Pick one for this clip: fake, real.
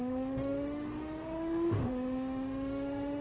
fake